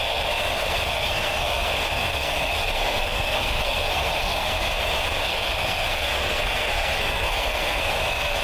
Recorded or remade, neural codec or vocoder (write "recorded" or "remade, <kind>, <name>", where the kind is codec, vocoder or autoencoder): remade, codec, SNAC